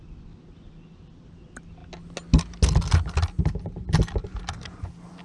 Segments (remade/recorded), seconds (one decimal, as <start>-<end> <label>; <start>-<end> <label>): 0.0-4.2 recorded; 4.2-5.2 remade